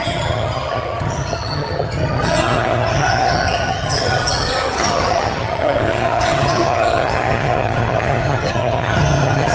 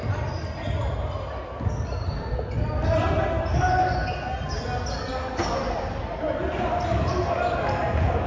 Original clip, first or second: second